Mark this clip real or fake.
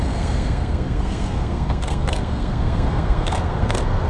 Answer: fake